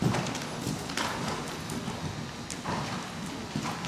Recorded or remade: recorded